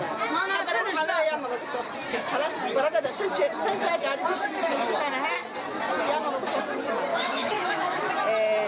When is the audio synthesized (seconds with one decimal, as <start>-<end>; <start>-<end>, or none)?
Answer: 7.1-8.1